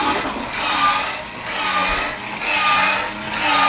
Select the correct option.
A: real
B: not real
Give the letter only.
A